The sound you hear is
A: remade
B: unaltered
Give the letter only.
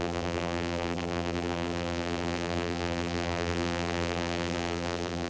A